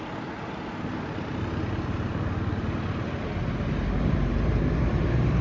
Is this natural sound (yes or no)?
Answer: yes